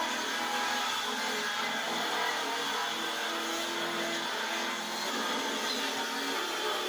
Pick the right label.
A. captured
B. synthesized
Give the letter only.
A